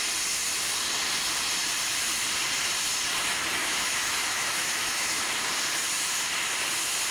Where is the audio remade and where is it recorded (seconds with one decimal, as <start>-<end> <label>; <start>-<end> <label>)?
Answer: 0.0-3.6 recorded; 3.6-5.2 remade; 5.2-7.1 recorded